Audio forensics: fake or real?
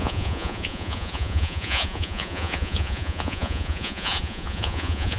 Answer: fake